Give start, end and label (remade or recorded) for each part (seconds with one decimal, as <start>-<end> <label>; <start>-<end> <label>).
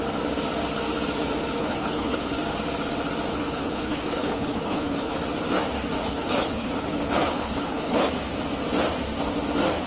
0.0-1.6 recorded; 1.6-2.4 remade; 2.4-3.3 recorded; 3.3-5.1 remade; 5.1-6.0 recorded; 6.0-8.1 remade; 8.1-9.9 recorded